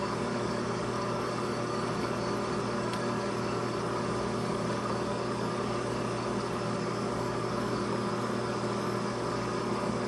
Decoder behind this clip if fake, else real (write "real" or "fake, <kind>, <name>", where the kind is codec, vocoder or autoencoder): fake, codec, DAC